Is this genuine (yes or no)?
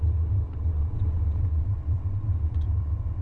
no